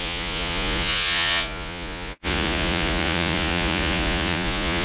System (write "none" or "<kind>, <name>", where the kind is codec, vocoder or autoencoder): vocoder, Vocos